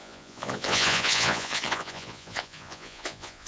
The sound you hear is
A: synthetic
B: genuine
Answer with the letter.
A